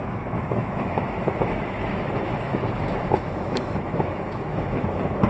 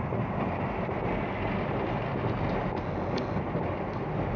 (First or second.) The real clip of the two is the second